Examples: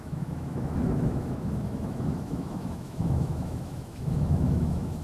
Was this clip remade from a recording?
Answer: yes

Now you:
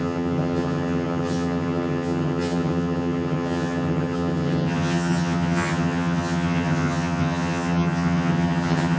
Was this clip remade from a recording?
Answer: yes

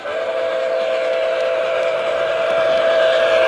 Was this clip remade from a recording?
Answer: no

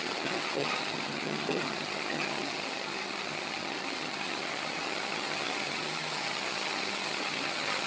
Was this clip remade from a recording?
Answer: yes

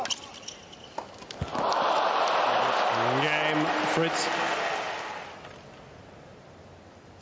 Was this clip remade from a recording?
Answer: no